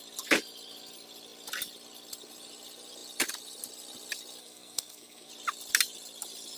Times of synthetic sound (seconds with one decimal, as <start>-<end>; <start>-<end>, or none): 4.4-5.3